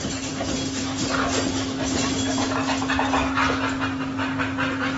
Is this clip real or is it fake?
real